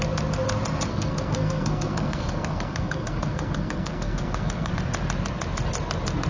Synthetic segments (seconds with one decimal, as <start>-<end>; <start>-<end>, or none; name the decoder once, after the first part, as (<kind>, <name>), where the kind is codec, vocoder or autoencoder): 0.9-4.7 (codec, SNAC)